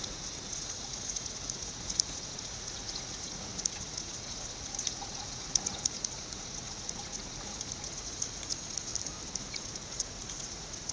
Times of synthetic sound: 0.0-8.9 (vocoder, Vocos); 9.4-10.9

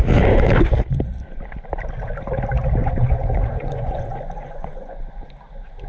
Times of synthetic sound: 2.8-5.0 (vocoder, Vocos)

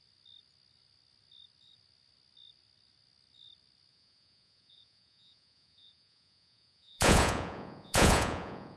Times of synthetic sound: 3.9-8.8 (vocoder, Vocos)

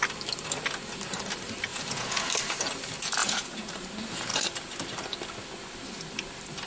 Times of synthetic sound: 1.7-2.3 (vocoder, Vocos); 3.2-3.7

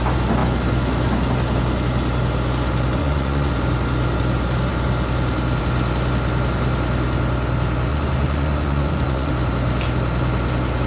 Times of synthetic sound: 3.0-3.5 (vocoder, Vocos); 7.9-9.3

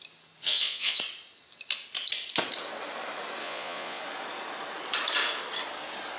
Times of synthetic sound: 0.4-1.0 (vocoder, Vocos); 3.4-4.0